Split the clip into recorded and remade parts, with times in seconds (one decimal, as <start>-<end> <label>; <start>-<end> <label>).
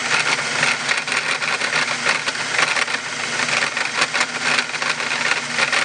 0.0-5.8 recorded